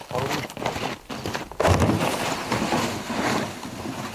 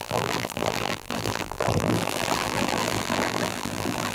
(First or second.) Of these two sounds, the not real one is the second